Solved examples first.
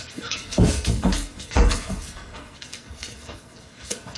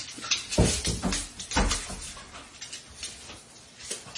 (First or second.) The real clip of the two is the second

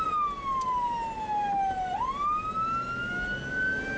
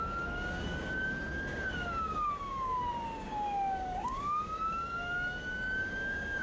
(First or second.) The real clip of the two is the first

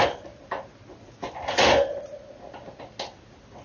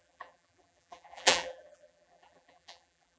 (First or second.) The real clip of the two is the first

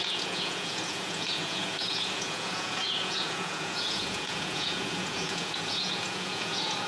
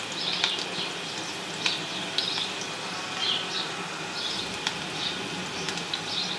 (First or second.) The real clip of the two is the second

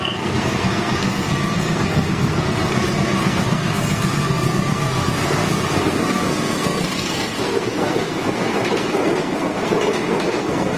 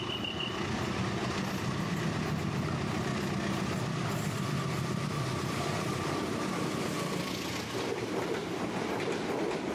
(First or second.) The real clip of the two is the second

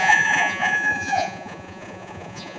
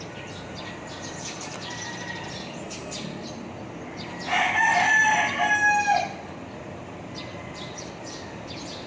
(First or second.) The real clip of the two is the second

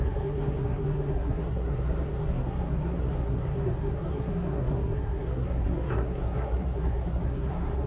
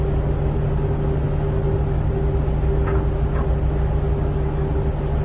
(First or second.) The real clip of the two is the second